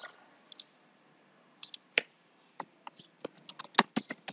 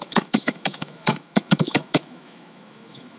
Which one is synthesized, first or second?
second